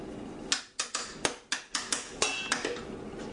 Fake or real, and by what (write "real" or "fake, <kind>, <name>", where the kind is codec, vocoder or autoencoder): real